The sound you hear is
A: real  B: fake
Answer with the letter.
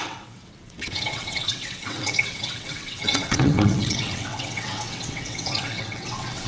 B